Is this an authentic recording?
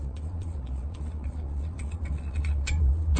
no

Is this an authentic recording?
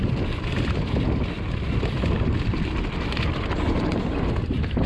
yes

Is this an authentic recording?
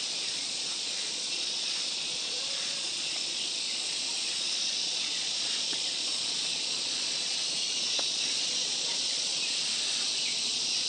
no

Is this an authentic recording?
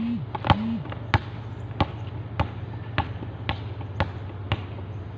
yes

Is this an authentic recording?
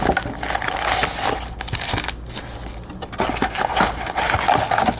yes